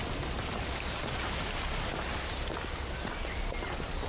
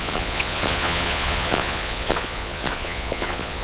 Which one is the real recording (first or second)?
first